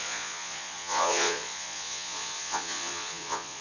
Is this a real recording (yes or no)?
no